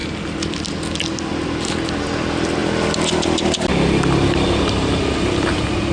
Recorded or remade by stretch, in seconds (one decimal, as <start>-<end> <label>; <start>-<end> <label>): 0.0-5.9 recorded